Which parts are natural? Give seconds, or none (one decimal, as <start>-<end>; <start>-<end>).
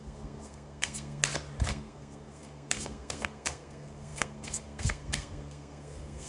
1.2-1.7